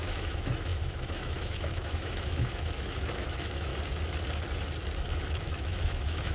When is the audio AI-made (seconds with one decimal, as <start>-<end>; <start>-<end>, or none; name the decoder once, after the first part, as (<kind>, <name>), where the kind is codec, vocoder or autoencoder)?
0.0-3.7 (autoencoder, DAC-VAE); 5.3-6.3